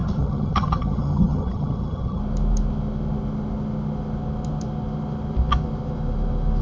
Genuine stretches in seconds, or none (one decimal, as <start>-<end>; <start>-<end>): 2.2-6.6